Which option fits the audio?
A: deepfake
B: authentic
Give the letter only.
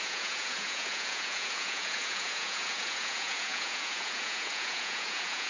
A